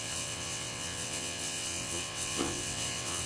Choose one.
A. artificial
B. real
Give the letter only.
A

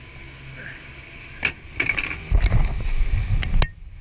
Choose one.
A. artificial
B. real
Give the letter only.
B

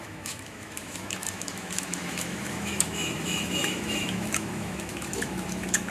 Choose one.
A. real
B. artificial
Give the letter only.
B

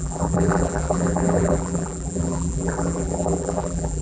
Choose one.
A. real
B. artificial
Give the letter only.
B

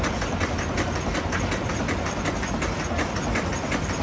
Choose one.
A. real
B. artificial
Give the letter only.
A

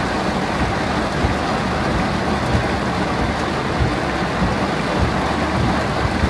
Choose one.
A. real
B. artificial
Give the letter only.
A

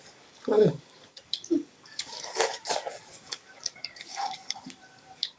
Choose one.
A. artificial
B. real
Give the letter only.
A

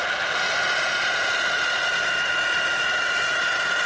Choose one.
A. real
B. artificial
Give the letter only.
A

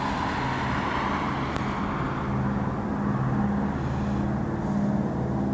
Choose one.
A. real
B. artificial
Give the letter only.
A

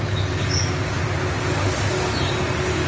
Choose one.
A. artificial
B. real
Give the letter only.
B